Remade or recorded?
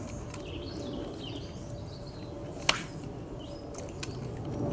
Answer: recorded